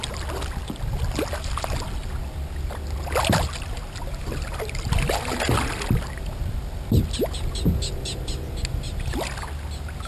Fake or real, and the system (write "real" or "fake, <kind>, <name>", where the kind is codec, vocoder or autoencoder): real